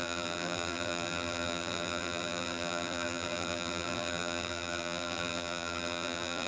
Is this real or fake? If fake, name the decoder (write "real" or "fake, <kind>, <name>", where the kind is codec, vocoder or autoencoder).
fake, vocoder, BigVGAN v2